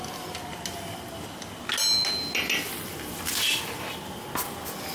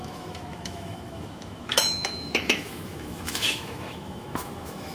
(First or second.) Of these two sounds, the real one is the first